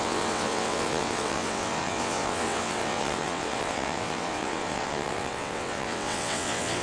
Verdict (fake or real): fake